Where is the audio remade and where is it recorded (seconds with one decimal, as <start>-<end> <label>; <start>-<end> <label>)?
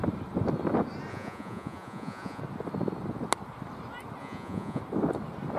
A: 0.0-1.1 recorded; 1.1-2.4 remade; 2.4-4.2 recorded; 4.2-4.8 remade; 4.8-5.6 recorded